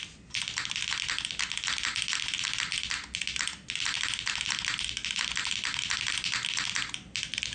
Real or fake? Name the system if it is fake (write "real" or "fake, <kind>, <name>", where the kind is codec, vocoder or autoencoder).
real